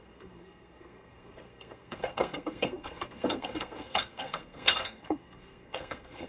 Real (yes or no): no